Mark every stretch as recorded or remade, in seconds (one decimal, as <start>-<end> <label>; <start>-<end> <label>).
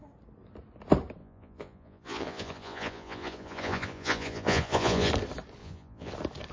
0.0-1.2 recorded; 1.2-5.1 remade; 5.1-5.6 recorded; 5.6-6.1 remade; 6.1-6.5 recorded